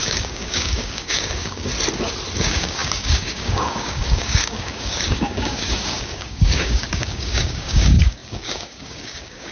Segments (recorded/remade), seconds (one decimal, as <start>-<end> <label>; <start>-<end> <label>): 0.0-1.7 remade; 1.7-2.4 recorded; 2.4-9.5 remade